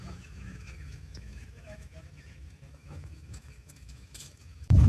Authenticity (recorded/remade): remade